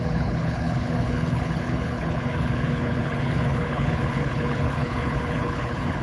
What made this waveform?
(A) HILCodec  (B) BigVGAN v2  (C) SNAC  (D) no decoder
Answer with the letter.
A